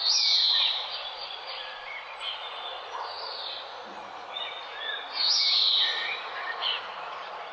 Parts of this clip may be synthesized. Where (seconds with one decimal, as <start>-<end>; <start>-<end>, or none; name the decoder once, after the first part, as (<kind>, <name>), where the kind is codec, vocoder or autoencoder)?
0.0-7.5 (vocoder, Vocos)